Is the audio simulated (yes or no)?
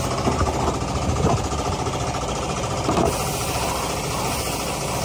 no